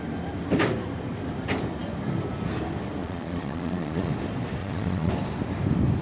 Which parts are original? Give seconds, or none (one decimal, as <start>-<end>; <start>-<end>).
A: 0.0-3.0; 4.1-4.6; 5.1-6.0

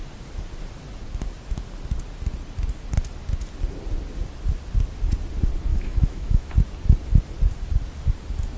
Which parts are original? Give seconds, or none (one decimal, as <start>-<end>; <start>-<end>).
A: 0.0-5.7; 6.5-8.6